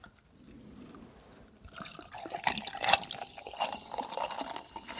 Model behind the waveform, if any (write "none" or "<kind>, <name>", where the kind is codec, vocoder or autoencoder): none